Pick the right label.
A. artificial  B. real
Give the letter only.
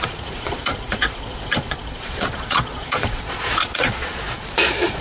A